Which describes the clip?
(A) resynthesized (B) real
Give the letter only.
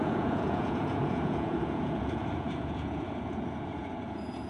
A